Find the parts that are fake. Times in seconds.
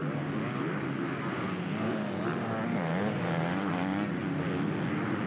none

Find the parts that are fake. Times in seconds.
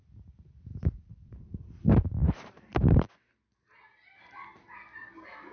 0.7-3.1 (vocoder, BigVGAN v2)